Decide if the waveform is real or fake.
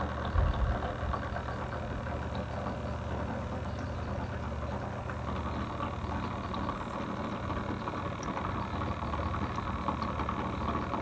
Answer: real